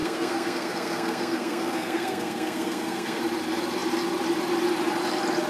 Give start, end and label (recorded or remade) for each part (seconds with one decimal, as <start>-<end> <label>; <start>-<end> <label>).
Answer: 0.0-3.2 remade; 3.2-5.5 recorded